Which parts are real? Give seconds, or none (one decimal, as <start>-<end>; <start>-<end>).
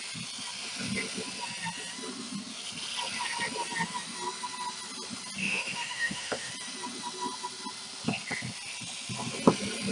0.0-5.4; 6.5-9.9